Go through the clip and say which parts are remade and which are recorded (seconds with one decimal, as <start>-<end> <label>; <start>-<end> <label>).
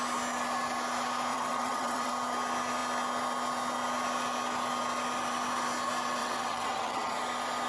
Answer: 0.0-1.3 recorded; 1.3-2.1 remade; 2.1-6.2 recorded; 6.2-7.1 remade; 7.1-7.7 recorded